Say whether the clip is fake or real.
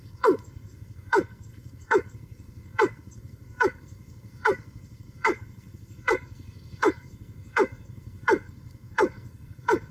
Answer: fake